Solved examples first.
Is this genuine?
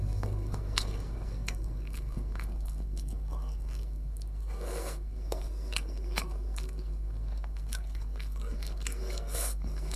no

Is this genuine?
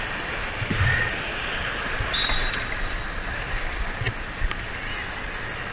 yes